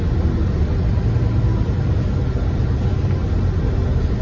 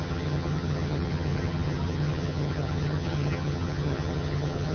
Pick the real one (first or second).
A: first